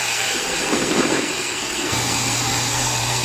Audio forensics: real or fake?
fake